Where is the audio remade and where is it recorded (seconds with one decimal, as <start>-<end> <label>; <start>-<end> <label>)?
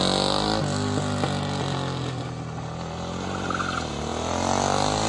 0.0-5.1 recorded